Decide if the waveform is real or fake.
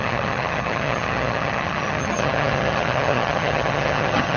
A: fake